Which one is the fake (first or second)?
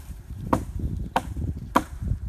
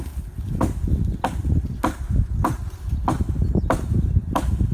first